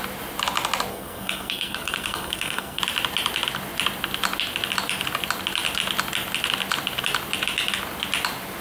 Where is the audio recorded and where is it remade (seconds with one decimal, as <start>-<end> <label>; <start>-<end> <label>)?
0.0-0.9 recorded; 0.9-2.8 remade; 2.8-8.6 recorded